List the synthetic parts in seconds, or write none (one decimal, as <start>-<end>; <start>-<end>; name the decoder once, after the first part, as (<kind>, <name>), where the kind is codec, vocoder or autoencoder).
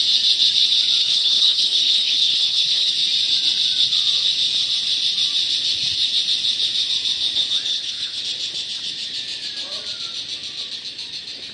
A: 1.0-2.9 (codec, HILCodec); 7.7-8.2